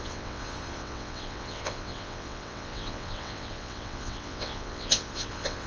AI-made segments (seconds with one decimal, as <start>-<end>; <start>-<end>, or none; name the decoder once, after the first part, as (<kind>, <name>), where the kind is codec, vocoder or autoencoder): 0.0-5.7 (vocoder, WaveNeXt)